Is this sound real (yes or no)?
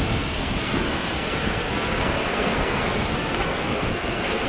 no